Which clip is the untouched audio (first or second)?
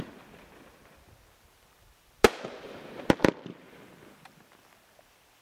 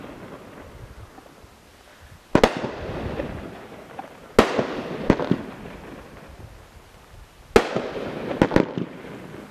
second